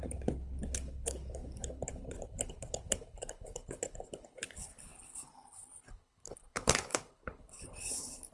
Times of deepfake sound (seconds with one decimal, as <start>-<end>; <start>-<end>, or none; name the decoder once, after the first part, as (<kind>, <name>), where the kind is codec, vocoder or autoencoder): 0.0-8.3 (codec, HILCodec)